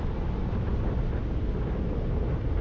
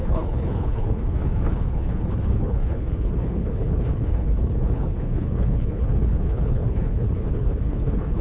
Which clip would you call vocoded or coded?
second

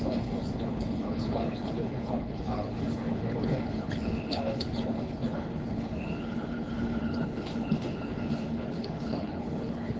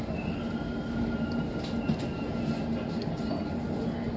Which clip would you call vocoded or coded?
first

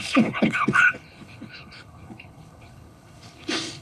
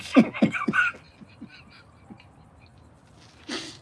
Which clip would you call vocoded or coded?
first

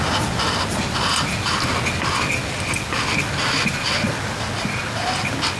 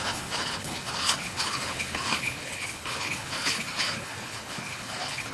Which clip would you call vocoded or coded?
second